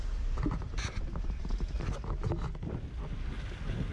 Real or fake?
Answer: real